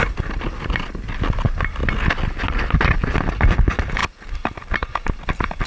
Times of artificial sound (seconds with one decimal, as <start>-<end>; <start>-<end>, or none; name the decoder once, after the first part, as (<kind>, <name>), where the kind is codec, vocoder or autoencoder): none